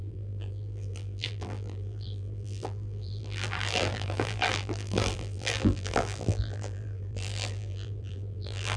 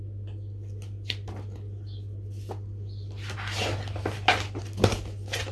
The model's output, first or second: first